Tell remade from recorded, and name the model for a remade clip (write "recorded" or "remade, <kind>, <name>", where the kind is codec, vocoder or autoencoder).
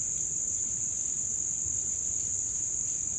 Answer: recorded